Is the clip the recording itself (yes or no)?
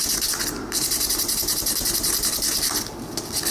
yes